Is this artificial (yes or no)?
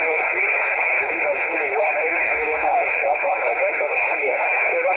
yes